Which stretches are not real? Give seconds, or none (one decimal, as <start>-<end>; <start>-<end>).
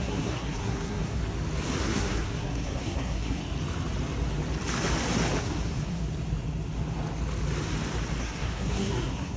0.0-1.2; 1.8-3.4; 5.4-6.0; 8.2-9.4